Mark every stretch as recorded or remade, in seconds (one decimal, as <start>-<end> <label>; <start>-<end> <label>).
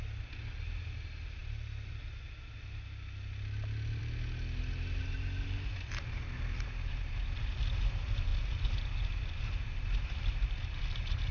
0.0-11.3 recorded